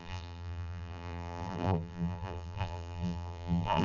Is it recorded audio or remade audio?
remade